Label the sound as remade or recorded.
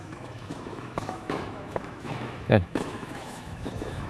remade